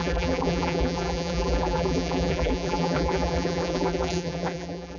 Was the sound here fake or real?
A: fake